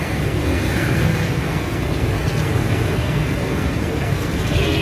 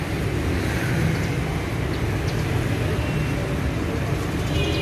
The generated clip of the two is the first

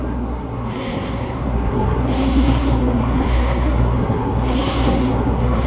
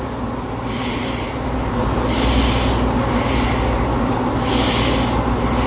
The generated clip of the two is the first